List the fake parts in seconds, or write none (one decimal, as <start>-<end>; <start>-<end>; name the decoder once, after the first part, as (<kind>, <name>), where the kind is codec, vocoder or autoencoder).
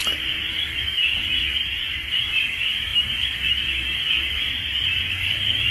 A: 0.5-1.6 (codec, DAC); 2.1-4.5; 5.1-5.7